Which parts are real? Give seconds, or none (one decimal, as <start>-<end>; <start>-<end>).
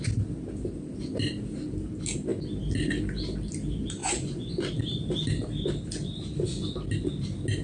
0.0-4.0; 4.5-7.6